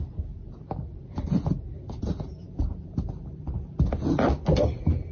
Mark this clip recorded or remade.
recorded